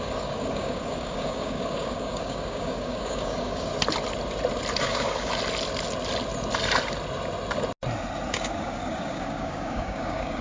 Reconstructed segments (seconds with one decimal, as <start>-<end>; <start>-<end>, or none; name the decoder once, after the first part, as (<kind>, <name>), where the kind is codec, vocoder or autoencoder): 0.0-3.7 (codec, DAC); 4.8-5.3; 8.3-10.4